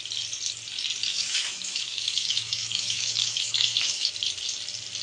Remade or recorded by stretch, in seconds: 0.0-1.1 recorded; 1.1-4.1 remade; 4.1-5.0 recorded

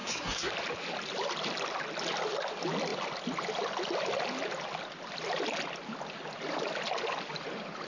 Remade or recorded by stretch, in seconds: 0.0-0.5 remade; 0.5-7.9 recorded